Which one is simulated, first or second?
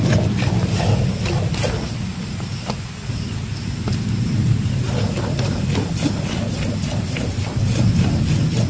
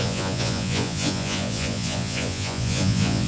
second